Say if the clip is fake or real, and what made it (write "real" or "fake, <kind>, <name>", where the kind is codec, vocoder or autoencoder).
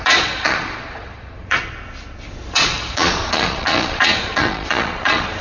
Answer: fake, vocoder, Vocos